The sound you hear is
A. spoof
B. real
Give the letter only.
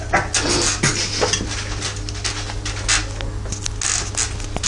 B